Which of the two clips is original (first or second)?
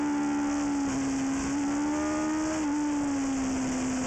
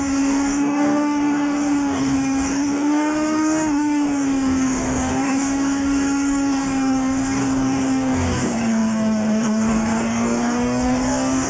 first